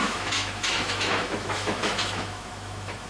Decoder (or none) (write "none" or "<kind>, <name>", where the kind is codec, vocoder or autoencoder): autoencoder, DAC-VAE